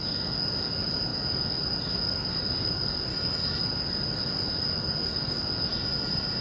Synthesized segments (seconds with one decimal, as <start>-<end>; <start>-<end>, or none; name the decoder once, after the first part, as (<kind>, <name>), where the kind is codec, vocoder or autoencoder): 3.1-3.6 (autoencoder, DAC-VAE); 5.7-6.4

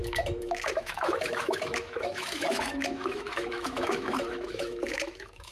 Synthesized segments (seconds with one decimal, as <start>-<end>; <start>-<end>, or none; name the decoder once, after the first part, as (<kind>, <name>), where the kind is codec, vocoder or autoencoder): 0.0-5.5 (autoencoder, DAC-VAE)

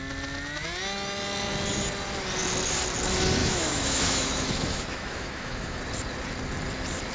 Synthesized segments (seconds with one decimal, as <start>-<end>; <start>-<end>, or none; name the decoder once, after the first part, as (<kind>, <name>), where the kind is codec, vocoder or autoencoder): 3.4-5.8 (autoencoder, DAC-VAE)

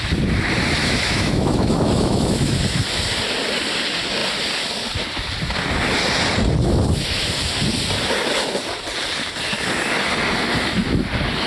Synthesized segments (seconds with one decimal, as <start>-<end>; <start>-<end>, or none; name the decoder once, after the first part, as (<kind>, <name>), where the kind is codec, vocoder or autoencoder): 0.8-2.6 (autoencoder, DAC-VAE)